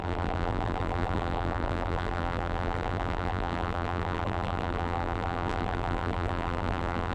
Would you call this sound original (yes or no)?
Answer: no